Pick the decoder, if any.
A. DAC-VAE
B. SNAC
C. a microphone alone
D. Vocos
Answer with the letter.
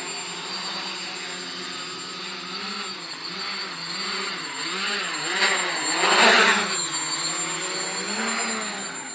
C